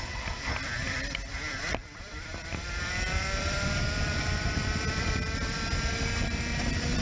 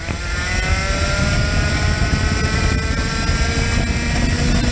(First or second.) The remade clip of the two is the first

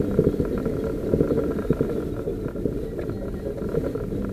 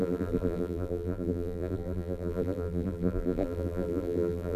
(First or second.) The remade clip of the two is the second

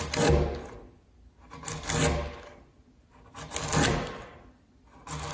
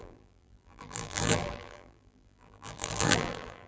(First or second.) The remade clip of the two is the second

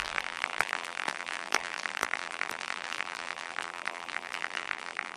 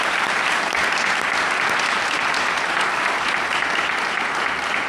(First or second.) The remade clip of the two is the first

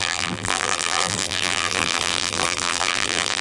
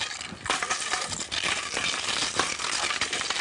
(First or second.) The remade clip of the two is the first